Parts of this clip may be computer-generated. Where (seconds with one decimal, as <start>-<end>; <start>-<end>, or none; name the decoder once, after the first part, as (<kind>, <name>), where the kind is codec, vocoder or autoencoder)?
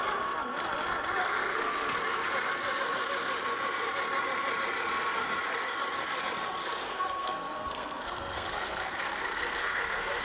1.2-1.9 (codec, SNAC); 6.8-10.2